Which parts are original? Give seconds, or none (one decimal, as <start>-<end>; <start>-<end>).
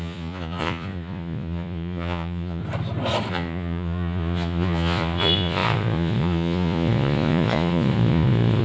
2.6-3.3